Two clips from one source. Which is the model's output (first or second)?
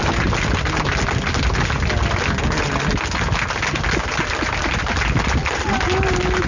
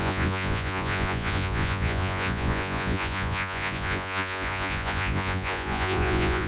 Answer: second